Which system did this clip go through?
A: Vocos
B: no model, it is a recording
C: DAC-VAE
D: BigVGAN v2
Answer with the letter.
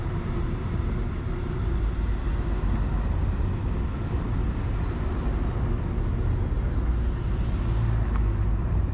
B